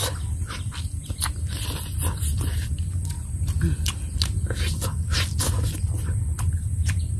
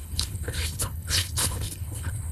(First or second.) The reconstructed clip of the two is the second